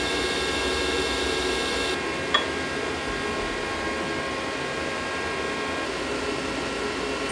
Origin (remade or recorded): recorded